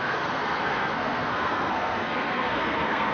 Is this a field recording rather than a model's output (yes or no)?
no